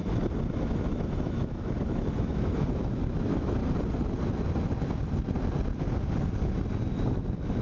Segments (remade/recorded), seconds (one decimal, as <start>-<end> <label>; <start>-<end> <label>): 0.0-0.5 recorded; 0.5-3.6 remade; 3.6-6.9 recorded; 6.9-7.6 remade